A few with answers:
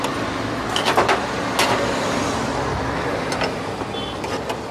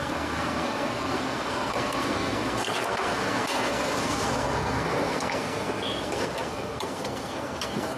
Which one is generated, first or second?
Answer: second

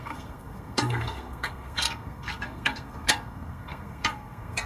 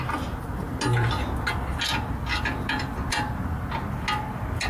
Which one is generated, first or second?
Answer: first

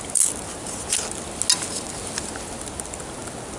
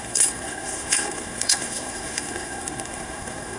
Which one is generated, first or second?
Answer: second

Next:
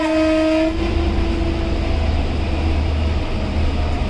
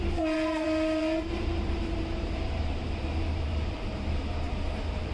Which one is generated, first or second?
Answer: second